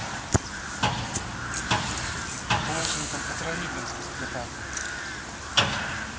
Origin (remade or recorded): recorded